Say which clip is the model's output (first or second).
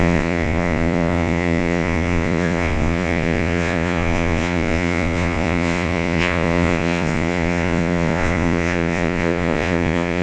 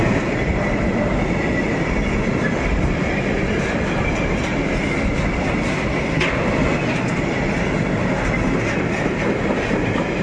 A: first